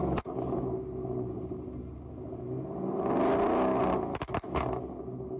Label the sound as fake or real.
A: real